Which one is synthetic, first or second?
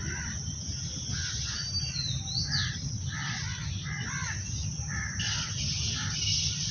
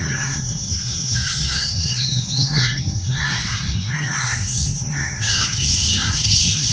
second